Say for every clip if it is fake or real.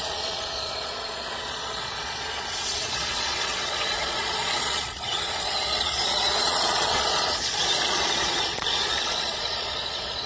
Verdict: fake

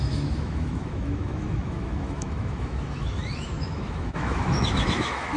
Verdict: fake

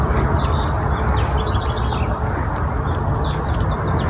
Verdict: real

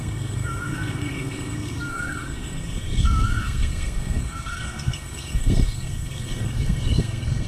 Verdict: fake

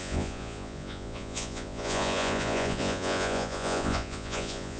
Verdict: fake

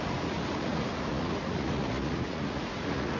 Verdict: fake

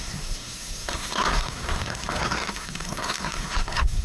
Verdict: fake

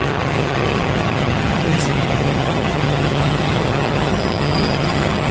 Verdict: fake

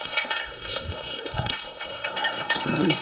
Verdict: fake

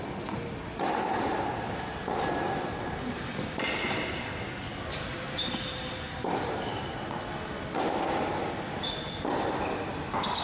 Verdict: real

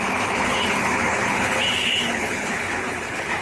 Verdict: fake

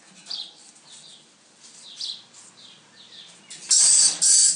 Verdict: real